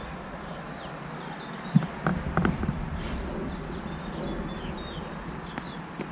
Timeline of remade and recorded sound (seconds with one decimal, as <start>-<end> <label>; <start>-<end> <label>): 0.0-6.1 recorded